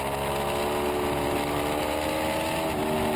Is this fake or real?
real